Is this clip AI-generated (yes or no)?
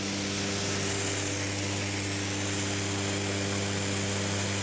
no